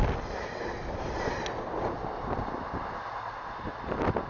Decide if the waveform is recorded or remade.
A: recorded